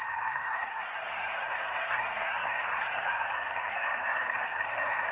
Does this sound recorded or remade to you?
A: remade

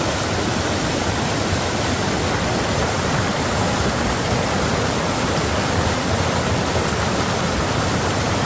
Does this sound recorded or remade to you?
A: recorded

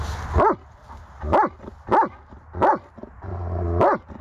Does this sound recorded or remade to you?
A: recorded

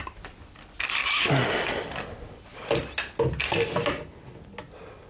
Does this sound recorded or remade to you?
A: recorded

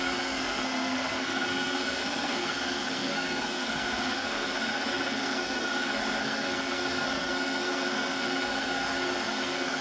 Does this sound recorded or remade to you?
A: remade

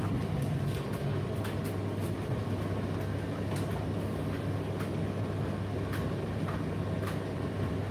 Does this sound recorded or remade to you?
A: recorded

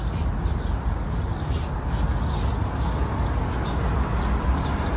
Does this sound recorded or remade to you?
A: recorded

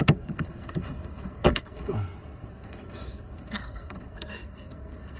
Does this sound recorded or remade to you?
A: remade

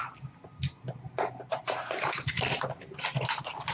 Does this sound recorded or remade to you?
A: recorded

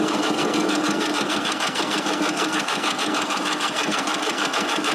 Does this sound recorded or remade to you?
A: remade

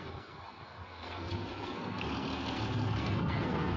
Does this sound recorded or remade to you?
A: remade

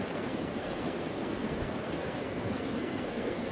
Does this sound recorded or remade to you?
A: remade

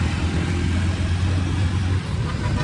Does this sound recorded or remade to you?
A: recorded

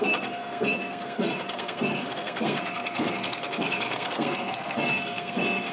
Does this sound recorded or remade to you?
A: remade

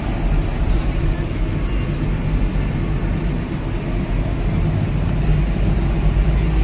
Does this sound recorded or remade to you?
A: recorded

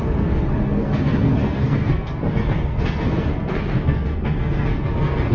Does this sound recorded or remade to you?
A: remade